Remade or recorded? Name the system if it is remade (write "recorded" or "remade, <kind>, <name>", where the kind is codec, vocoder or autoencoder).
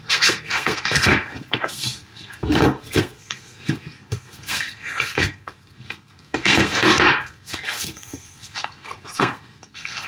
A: remade, codec, SNAC